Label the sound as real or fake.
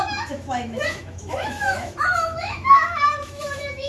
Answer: fake